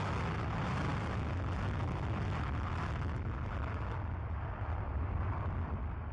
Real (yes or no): yes